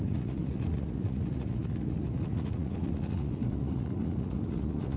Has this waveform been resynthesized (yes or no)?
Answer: yes